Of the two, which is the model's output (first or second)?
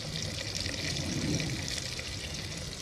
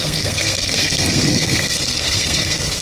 second